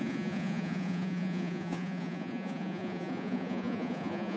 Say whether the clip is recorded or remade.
remade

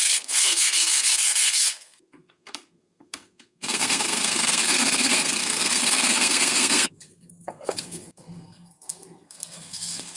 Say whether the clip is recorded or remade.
remade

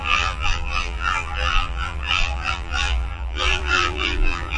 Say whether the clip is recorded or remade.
remade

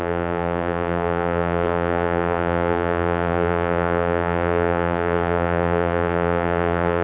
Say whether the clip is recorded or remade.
remade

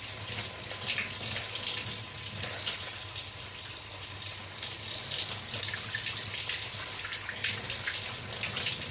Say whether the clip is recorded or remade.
recorded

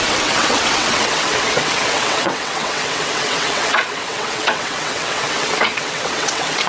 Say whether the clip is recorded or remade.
remade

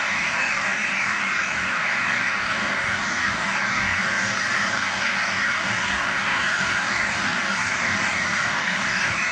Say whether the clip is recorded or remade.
remade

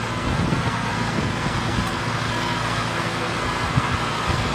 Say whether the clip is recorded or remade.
remade